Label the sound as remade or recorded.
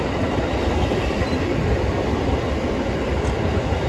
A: recorded